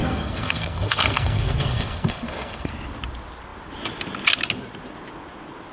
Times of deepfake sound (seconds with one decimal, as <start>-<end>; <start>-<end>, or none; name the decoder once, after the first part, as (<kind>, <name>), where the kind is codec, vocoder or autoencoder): 0.0-2.7 (codec, SNAC)